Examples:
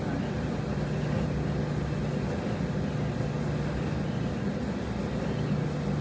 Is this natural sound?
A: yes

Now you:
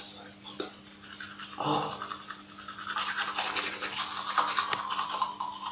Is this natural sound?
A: yes